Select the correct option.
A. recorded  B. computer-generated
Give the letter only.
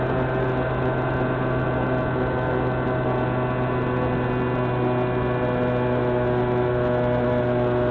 A